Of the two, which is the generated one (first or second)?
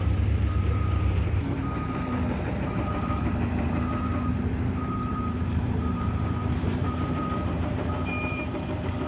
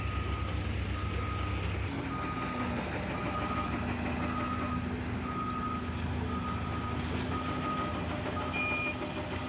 first